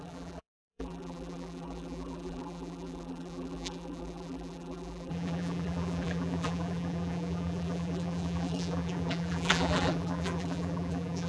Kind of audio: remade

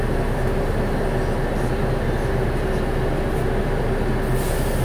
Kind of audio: recorded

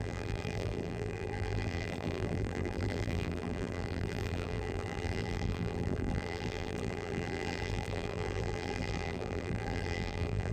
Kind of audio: remade